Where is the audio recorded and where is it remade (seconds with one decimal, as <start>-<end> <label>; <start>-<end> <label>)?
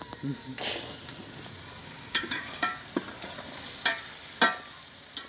0.0-1.8 recorded; 1.8-2.7 remade; 2.7-5.3 recorded